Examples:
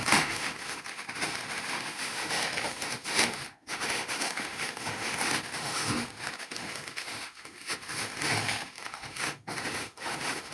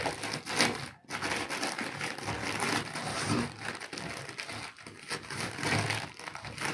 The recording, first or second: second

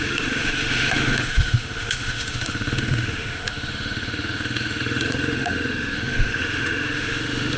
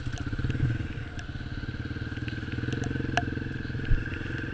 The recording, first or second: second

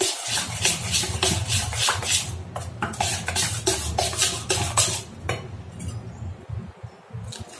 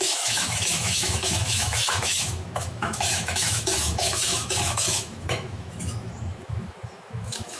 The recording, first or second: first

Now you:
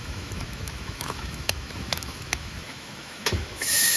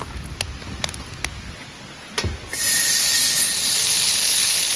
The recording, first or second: second